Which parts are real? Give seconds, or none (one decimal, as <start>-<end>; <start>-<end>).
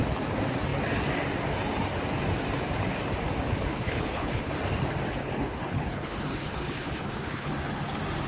0.0-3.7; 4.5-5.2; 7.5-8.3